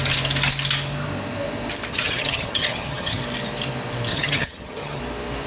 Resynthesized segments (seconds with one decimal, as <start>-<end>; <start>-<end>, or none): 1.9-3.2; 4.1-5.0